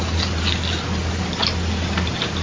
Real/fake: real